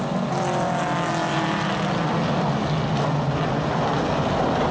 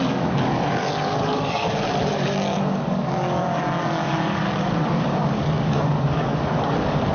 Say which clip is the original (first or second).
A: first